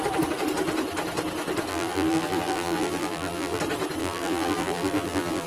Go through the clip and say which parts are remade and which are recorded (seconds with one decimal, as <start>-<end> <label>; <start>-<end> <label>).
0.0-1.7 recorded; 1.7-3.6 remade; 3.6-4.0 recorded; 4.0-5.5 remade